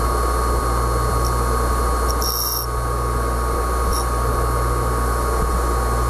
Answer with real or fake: real